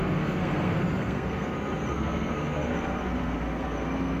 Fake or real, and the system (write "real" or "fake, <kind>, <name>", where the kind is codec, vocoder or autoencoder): fake, codec, SNAC